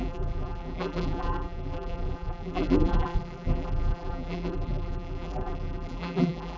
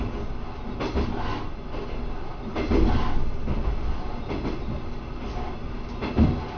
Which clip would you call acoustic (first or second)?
second